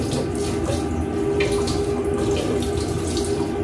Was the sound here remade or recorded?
recorded